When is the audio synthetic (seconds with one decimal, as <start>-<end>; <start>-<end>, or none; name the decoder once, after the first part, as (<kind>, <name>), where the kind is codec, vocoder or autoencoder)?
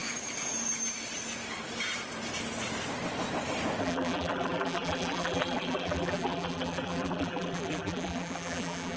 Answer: 3.8-9.0 (vocoder, BigVGAN v2)